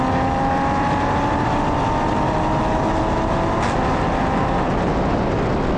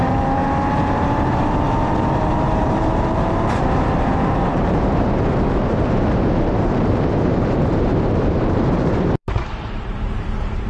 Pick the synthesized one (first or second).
second